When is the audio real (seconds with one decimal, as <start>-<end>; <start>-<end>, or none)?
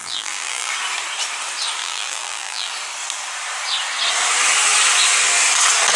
0.7-1.8; 2.7-6.0